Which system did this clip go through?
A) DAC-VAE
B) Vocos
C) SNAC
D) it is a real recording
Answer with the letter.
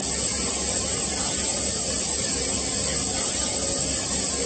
D